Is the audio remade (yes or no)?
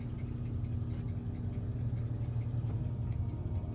no